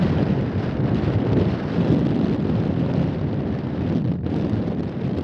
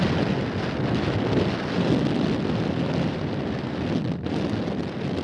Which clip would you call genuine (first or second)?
second